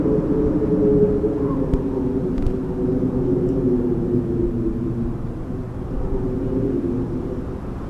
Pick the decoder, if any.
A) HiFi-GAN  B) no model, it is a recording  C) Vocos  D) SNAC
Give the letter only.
B